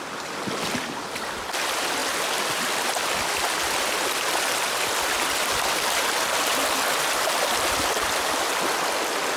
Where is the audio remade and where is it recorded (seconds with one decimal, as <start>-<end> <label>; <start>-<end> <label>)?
0.0-9.4 recorded